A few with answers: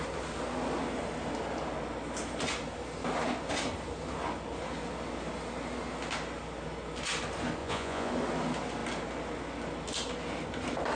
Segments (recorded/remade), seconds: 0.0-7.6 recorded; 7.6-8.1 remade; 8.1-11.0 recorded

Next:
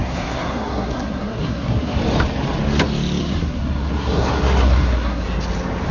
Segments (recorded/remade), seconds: 0.0-2.0 remade; 2.0-3.2 recorded; 3.2-5.2 remade; 5.2-5.9 recorded

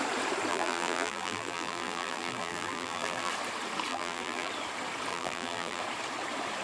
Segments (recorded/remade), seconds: 0.0-0.5 recorded; 0.5-3.3 remade; 3.3-3.9 recorded; 3.9-4.5 remade; 4.5-5.1 recorded; 5.1-5.8 remade; 5.8-6.6 recorded

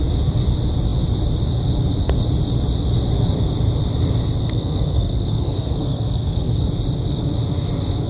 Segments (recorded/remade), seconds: 0.0-4.4 recorded; 4.4-6.6 remade; 6.6-8.1 recorded

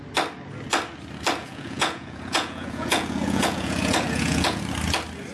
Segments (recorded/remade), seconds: 0.0-1.4 recorded; 1.4-4.6 remade; 4.6-5.3 recorded

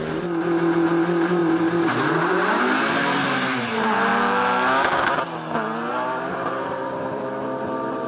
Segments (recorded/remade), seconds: 0.0-4.1 remade; 4.1-5.9 recorded; 5.9-8.1 remade

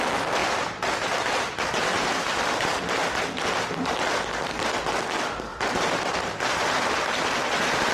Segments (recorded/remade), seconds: 0.0-0.4 recorded; 0.4-3.0 remade; 3.0-5.5 recorded; 5.5-7.9 remade